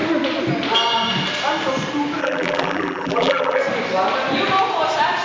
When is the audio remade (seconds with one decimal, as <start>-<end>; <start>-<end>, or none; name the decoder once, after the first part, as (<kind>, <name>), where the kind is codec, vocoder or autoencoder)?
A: 2.2-3.6 (vocoder, BigVGAN v2)